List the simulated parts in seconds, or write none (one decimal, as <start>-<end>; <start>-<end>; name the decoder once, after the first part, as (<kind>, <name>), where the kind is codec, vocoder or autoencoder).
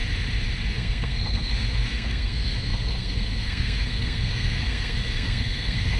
0.7-6.0 (codec, SNAC)